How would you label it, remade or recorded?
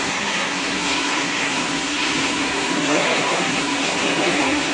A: remade